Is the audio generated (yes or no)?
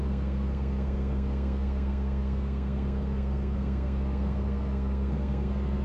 yes